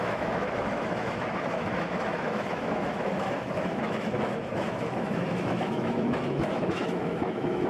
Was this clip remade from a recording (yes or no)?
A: yes